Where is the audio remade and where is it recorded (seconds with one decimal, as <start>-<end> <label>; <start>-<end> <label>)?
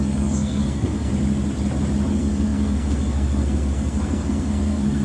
0.0-1.1 remade; 1.1-2.1 recorded; 2.1-5.0 remade